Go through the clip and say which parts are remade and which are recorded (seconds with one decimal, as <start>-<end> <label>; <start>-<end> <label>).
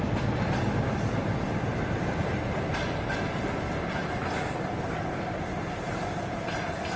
0.0-7.0 recorded